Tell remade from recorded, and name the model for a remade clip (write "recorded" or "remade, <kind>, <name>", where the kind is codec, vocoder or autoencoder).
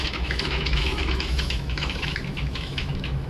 remade, autoencoder, DAC-VAE